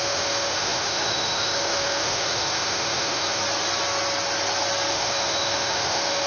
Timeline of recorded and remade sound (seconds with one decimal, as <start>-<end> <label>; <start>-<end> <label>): 0.0-3.4 remade; 3.4-4.9 recorded; 4.9-6.3 remade

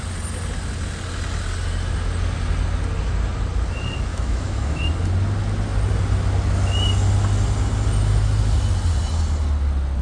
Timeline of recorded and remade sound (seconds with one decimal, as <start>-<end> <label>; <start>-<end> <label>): 0.0-4.1 recorded; 4.1-4.9 remade; 4.9-10.0 recorded